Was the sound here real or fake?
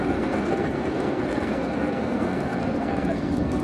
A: fake